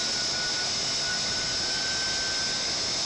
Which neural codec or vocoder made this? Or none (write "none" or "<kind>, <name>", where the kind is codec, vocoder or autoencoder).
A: none